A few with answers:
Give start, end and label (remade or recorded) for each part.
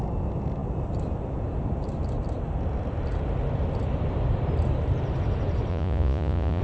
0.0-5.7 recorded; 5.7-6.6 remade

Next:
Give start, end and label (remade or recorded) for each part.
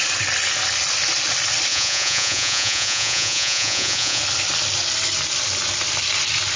0.0-1.7 recorded; 1.7-4.2 remade; 4.2-6.6 recorded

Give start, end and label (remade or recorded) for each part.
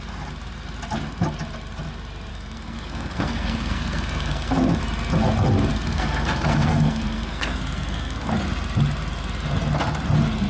0.0-2.3 recorded; 2.3-4.8 remade; 4.8-5.7 recorded; 5.7-8.3 remade; 8.3-10.5 recorded